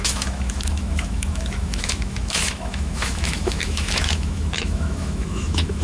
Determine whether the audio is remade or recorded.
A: remade